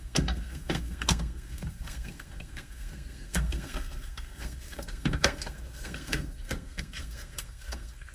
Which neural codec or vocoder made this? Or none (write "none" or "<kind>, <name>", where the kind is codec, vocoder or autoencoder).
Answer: codec, SNAC